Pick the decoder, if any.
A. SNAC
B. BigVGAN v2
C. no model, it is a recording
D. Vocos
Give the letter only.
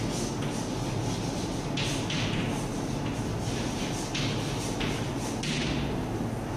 C